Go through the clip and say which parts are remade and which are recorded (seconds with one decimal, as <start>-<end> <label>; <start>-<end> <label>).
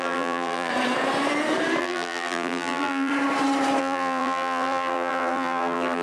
0.0-0.7 remade; 0.7-1.8 recorded; 1.8-3.1 remade; 3.1-3.8 recorded; 3.8-6.0 remade